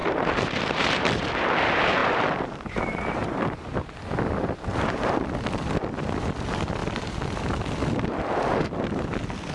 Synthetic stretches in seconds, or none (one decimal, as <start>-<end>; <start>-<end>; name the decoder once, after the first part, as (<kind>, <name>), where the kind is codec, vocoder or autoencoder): 0.0-1.3 (vocoder, BigVGAN v2); 2.0-3.6; 4.7-5.3